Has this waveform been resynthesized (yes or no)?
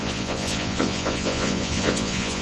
yes